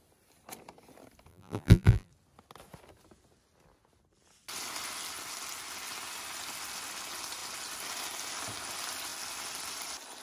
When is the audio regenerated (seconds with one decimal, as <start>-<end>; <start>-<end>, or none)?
1.3-2.1